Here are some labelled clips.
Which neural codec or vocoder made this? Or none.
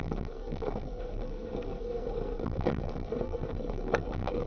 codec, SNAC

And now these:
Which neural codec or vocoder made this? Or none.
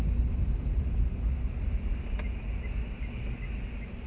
none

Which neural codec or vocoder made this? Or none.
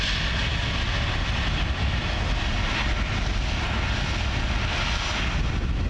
none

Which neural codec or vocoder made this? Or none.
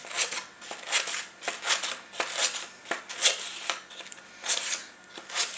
none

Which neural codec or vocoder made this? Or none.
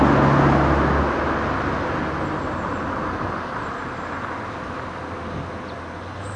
none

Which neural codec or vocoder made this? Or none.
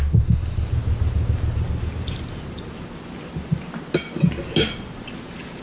none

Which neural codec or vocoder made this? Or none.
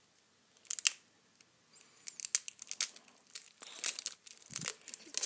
none